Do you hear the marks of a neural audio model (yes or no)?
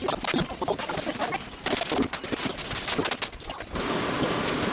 no